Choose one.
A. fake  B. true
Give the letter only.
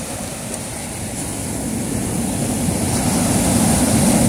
B